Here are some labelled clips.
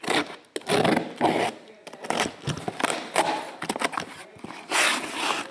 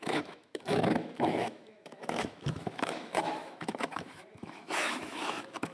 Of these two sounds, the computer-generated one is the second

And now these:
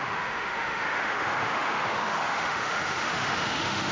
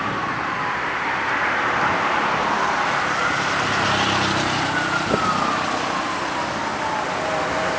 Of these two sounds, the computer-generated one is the first